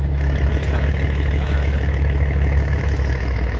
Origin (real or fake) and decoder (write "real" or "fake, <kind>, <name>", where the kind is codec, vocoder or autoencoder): fake, autoencoder, DAC-VAE